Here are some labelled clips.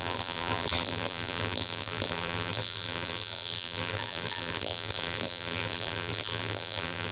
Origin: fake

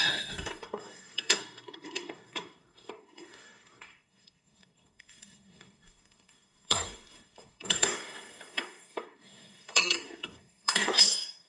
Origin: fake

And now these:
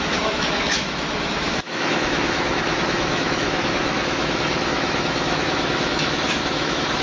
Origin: fake